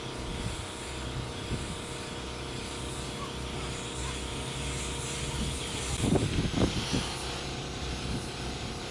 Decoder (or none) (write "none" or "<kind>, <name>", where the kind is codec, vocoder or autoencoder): none